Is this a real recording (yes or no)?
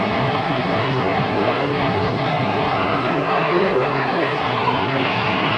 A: no